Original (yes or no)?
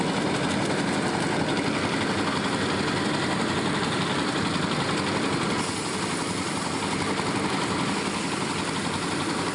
yes